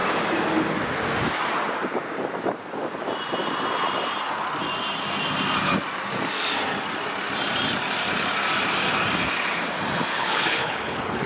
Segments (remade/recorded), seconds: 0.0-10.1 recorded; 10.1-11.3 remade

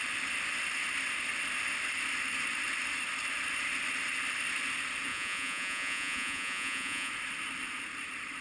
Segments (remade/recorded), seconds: 0.0-5.1 recorded; 5.1-7.1 remade; 7.1-8.4 recorded

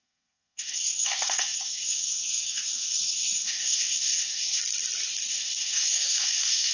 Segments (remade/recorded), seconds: 0.0-4.6 remade; 4.6-5.3 recorded; 5.3-6.7 remade

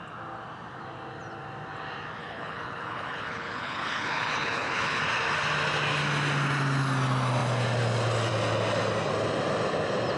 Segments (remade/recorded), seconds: 0.0-2.2 recorded; 2.2-5.0 remade; 5.0-10.2 recorded

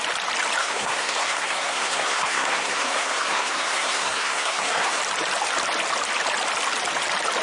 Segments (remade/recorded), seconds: 0.0-0.6 recorded; 0.6-5.0 remade; 5.0-7.4 recorded

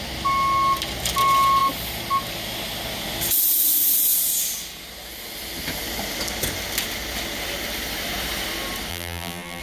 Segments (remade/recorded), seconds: 0.0-8.9 recorded; 8.9-9.6 remade

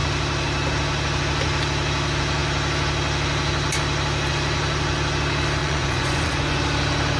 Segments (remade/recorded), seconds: 0.0-5.6 recorded; 5.6-6.6 remade; 6.6-7.2 recorded